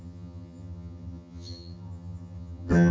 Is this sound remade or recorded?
remade